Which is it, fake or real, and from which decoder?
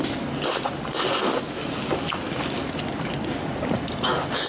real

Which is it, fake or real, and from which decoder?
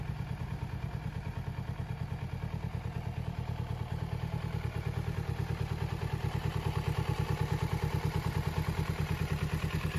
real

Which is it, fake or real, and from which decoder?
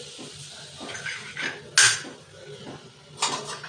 real